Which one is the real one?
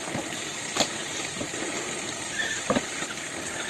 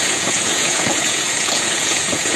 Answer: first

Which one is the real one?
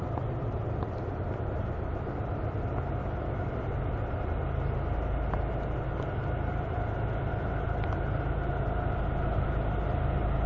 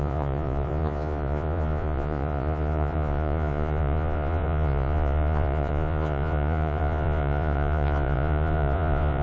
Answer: first